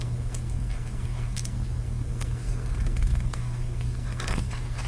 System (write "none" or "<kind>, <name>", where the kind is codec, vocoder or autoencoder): codec, SNAC